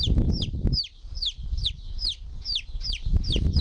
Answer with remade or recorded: recorded